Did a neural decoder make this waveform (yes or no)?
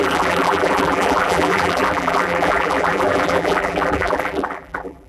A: yes